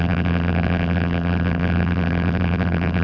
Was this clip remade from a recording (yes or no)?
yes